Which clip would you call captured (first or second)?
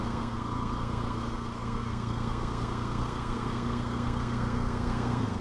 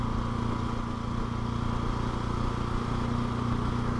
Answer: second